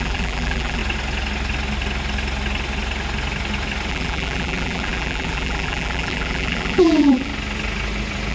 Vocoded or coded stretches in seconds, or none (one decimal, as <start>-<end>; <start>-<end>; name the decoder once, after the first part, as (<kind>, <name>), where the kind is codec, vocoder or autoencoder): 0.0-0.8 (vocoder, BigVGAN v2); 3.9-7.3